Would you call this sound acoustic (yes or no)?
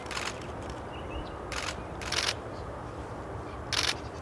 yes